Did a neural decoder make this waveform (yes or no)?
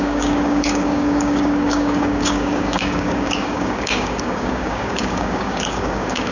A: yes